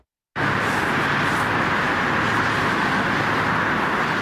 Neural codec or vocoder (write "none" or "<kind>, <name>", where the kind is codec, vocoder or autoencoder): none